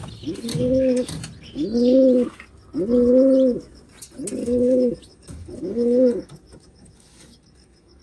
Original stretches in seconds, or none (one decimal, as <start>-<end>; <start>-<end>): 0.0-0.5; 1.1-4.4